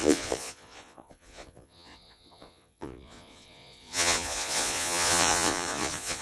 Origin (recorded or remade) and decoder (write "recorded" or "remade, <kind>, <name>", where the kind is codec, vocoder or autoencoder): remade, vocoder, Vocos